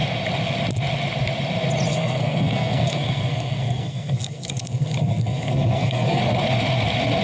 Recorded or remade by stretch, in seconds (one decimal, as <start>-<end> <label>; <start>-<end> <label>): 0.0-1.9 recorded; 1.9-6.2 remade; 6.2-7.2 recorded

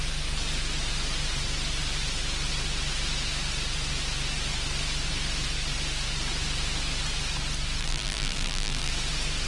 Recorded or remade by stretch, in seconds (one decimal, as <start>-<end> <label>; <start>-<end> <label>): 0.0-7.8 recorded; 7.8-8.9 remade; 8.9-9.5 recorded

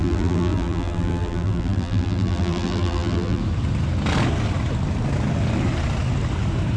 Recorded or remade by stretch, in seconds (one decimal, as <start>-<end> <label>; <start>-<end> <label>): 0.0-3.4 remade; 3.4-6.8 recorded

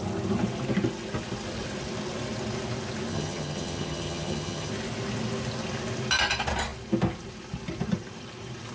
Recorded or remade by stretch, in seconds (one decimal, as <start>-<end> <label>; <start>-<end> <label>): 0.0-3.1 recorded; 3.1-4.7 remade; 4.7-8.7 recorded

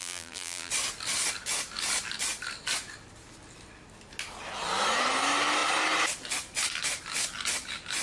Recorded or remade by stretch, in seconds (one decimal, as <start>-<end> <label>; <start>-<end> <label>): 0.0-0.7 remade; 0.7-8.0 recorded

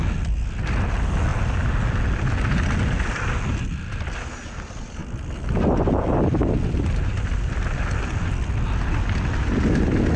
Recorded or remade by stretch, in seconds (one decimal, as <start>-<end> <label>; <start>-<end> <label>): 0.0-10.2 recorded

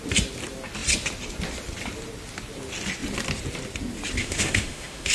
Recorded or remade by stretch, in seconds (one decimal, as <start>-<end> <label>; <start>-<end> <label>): 0.0-4.2 recorded; 4.2-5.1 remade

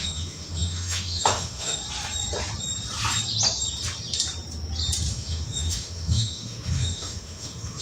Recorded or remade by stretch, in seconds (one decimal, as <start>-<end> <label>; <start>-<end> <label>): 0.0-1.8 remade; 1.8-5.1 recorded; 5.1-7.8 remade